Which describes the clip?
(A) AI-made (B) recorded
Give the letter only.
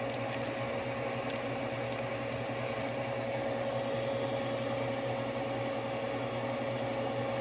B